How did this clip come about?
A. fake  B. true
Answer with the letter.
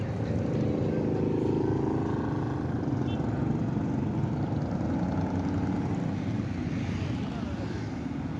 B